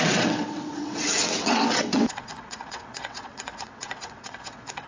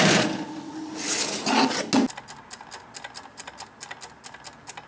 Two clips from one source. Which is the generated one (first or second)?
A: first